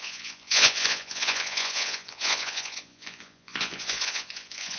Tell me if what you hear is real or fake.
fake